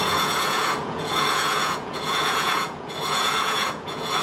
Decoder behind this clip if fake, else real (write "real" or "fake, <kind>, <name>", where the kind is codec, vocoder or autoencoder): fake, vocoder, Vocos